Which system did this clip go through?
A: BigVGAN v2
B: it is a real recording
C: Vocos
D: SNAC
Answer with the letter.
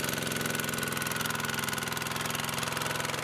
B